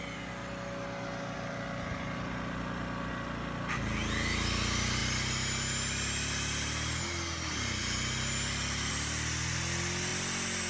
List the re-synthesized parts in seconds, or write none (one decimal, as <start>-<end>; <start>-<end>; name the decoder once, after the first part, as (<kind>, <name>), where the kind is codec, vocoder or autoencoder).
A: none